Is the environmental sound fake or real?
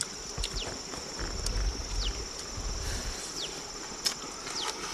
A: real